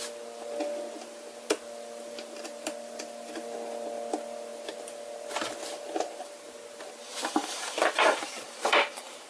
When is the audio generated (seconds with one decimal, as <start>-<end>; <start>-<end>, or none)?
7.4-9.3

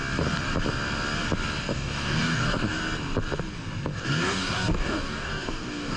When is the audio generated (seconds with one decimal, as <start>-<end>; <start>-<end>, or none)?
1.7-2.8; 3.9-6.0

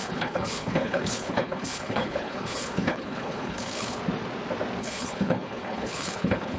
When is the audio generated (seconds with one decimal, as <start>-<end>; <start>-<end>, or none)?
0.0-4.0; 4.8-6.6

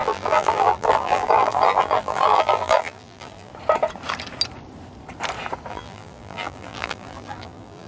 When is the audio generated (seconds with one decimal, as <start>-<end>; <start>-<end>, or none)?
0.0-3.5; 5.7-7.9

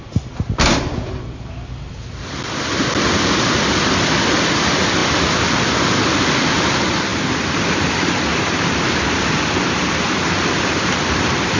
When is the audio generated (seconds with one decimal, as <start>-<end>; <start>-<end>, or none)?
7.1-8.1

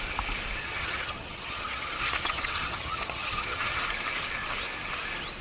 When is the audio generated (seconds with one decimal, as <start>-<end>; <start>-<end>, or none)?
0.6-3.8

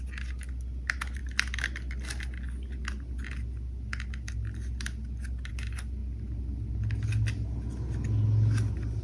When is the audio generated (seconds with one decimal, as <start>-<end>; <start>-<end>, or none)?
none